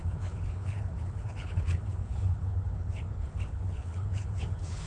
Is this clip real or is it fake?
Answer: fake